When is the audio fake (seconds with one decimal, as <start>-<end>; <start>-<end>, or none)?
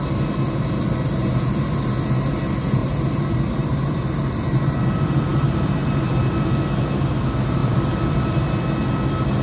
2.8-4.8; 5.3-6.2; 7.6-8.6